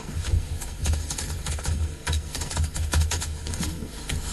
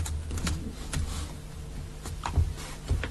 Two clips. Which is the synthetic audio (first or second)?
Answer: first